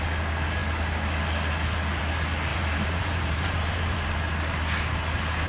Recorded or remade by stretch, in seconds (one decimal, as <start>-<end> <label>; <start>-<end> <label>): 0.0-2.5 recorded; 2.5-4.2 remade; 4.2-5.5 recorded